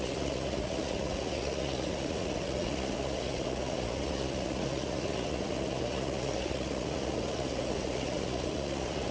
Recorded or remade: remade